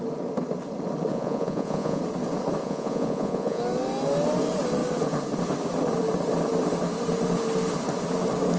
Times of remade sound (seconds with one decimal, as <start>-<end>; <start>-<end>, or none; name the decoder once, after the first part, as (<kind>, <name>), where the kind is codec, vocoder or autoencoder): 1.1-2.0 (vocoder, Vocos); 2.6-3.6